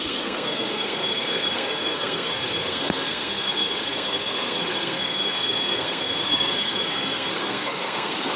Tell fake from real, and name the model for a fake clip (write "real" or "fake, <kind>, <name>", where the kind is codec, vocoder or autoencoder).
fake, codec, SNAC